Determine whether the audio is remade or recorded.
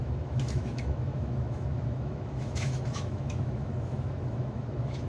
remade